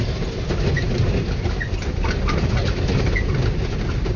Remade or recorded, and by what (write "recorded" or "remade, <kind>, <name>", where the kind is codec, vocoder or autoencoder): recorded